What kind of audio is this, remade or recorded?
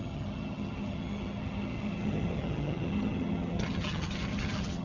remade